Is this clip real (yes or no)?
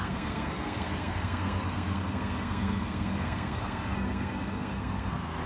no